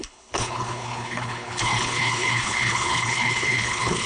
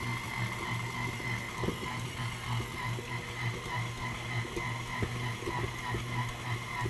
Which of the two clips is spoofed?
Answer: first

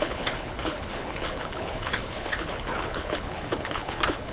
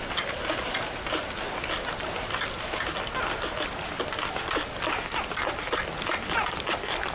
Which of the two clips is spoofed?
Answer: first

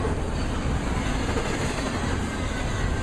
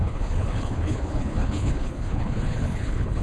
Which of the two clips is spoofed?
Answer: second